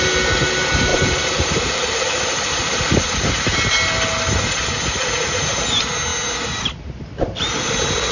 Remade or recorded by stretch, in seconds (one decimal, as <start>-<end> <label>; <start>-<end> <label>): 0.0-0.9 recorded; 0.9-2.0 remade; 2.0-8.1 recorded